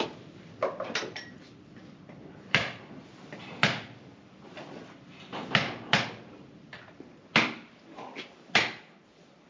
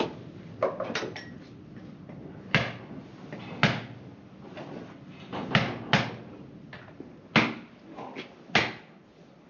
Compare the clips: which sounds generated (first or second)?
first